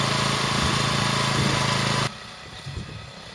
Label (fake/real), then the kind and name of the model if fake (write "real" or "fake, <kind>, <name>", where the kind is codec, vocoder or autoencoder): real